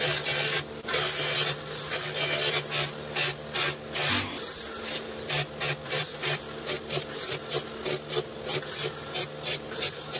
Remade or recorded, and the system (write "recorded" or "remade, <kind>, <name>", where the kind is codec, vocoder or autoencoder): recorded